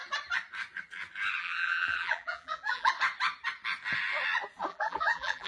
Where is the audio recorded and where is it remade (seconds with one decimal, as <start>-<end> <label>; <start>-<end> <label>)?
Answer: 0.0-1.4 recorded; 1.4-2.9 remade; 2.9-4.7 recorded; 4.7-5.5 remade